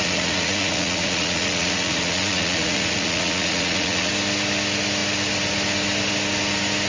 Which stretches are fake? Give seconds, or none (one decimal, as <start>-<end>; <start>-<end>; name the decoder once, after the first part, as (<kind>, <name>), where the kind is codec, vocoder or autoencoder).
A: 0.0-4.1 (vocoder, Vocos)